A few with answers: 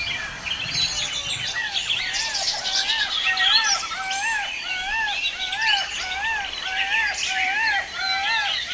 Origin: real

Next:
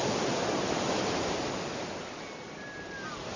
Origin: real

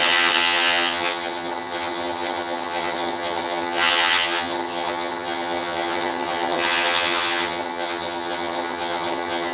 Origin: fake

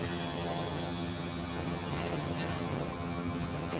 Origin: fake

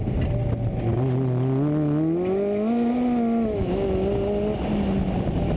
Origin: real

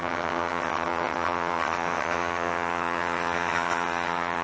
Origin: fake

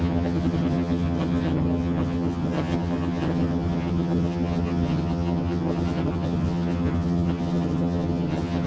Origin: fake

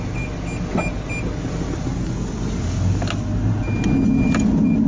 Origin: real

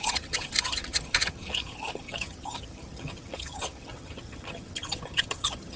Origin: fake